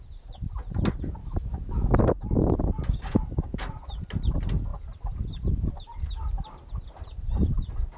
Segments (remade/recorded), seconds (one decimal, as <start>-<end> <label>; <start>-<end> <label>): 0.0-1.2 recorded; 1.2-2.0 remade; 2.0-8.0 recorded